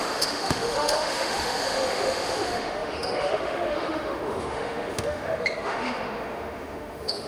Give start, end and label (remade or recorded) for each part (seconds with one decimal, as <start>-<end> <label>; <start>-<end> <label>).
0.0-7.3 remade